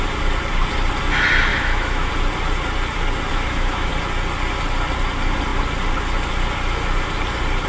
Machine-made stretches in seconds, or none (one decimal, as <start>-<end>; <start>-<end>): 1.5-2.1; 3.3-3.9